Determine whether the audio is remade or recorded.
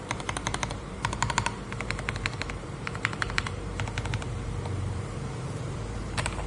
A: remade